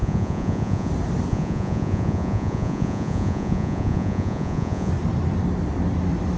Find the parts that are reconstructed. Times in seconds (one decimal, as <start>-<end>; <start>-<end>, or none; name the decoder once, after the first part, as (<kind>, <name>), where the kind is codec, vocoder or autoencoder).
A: 0.0-0.9 (vocoder, Vocos); 1.3-4.9